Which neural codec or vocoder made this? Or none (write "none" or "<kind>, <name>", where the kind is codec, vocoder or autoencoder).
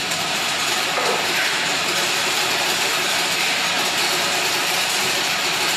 vocoder, BigVGAN v2